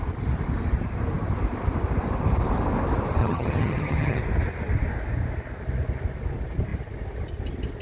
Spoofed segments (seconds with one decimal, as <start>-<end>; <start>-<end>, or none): 3.2-4.2

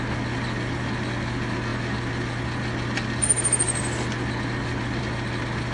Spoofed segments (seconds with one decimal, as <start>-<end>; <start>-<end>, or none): none